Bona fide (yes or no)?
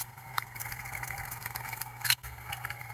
no